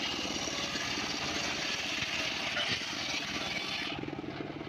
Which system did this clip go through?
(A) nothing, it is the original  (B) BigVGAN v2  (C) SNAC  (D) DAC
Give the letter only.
A